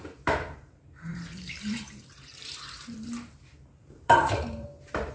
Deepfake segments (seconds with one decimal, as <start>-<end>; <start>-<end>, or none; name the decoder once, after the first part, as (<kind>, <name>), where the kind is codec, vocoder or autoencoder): 0.0-5.1 (vocoder, BigVGAN v2)

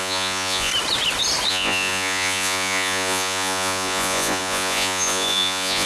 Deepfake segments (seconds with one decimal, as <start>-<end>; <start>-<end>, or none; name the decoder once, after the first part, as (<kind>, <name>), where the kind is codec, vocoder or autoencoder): 0.0-0.7 (vocoder, Vocos); 1.5-5.9

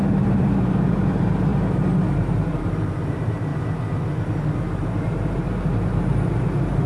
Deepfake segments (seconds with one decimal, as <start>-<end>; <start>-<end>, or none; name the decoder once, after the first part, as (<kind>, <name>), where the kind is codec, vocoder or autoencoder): 0.0-3.5 (vocoder, BigVGAN v2); 4.5-6.9

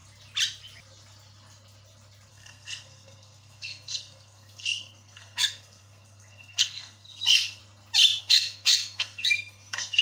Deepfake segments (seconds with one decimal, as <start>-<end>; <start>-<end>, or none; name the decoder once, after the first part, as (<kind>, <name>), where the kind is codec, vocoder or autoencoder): 2.3-7.6 (codec, SNAC); 8.2-10.0

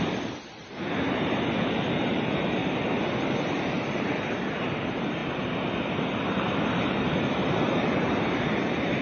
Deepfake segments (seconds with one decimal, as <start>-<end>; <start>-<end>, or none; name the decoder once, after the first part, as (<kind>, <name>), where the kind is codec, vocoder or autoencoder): 0.0-2.6 (vocoder, BigVGAN v2); 3.4-5.2; 6.0-9.0